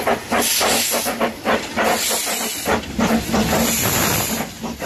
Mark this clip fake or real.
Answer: real